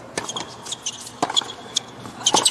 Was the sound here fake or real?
real